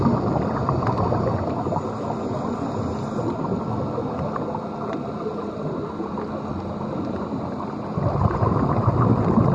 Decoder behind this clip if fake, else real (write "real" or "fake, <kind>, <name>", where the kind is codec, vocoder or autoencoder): real